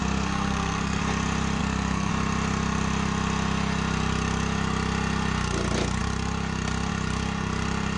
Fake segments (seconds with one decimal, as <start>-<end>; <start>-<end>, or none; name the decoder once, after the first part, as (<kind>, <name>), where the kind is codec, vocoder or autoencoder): 0.0-1.0 (codec, SNAC); 1.6-2.1